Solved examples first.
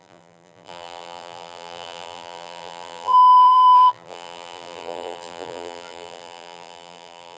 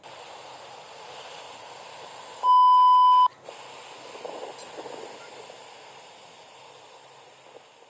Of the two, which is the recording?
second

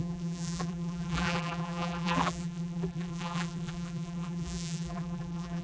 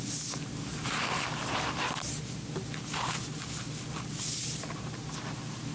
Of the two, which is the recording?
second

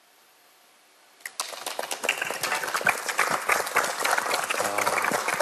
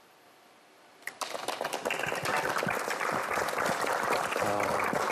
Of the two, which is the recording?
first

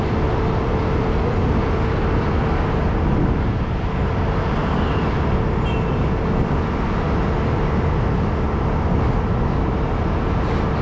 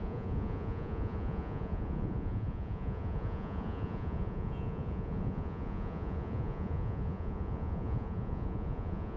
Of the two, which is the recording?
first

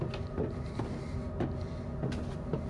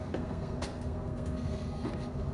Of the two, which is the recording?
first